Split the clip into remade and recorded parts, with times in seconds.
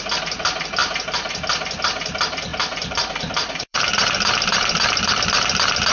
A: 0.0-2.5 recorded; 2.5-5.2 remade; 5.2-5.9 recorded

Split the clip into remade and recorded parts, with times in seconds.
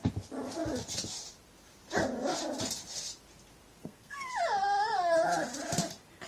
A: 0.0-3.8 recorded; 3.8-4.3 remade; 4.3-6.3 recorded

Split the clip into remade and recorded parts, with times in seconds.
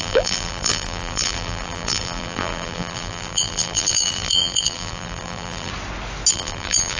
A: 0.0-5.7 remade; 5.7-6.3 recorded; 6.3-7.0 remade